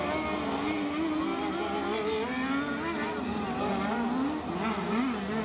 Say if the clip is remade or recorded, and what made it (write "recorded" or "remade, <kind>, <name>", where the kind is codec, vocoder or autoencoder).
recorded